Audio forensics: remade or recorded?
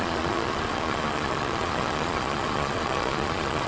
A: remade